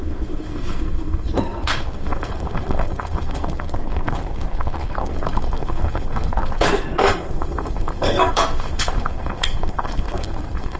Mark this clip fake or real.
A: fake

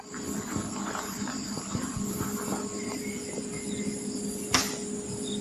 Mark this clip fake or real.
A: real